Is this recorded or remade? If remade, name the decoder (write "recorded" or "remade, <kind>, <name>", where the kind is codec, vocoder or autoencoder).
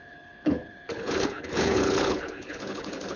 remade, codec, HILCodec